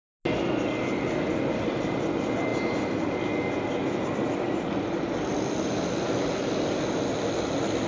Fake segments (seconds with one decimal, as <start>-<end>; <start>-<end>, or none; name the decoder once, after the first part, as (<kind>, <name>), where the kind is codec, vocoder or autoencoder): none